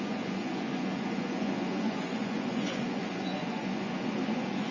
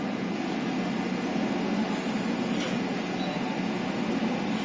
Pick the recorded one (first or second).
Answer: second